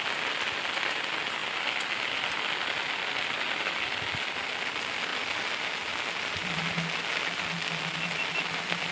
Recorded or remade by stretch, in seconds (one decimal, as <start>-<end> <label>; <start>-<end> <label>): 0.0-8.9 recorded